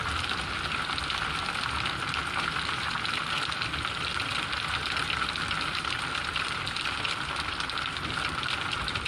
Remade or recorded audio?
recorded